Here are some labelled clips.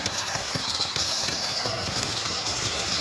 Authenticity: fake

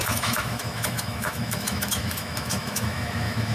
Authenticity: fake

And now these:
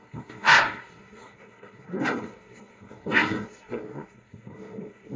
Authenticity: fake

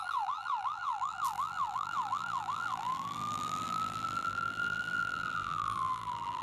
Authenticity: fake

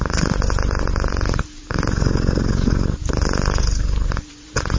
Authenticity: fake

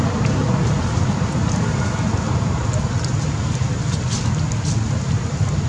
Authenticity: real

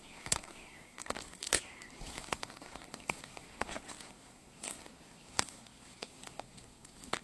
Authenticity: fake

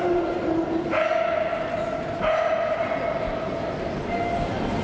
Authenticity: real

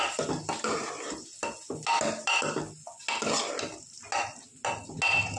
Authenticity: real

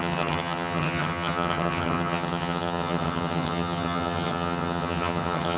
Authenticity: fake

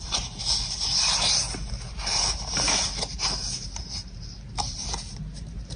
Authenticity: fake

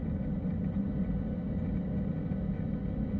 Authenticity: real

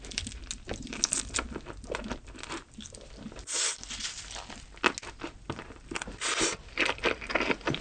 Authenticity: real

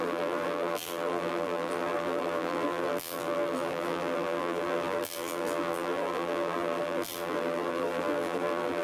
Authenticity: fake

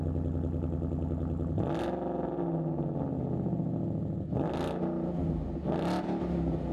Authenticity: real